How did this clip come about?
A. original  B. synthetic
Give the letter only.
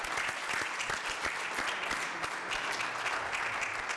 A